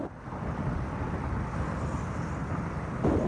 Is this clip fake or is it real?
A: real